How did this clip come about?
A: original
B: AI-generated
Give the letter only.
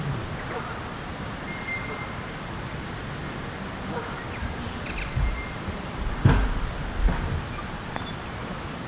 A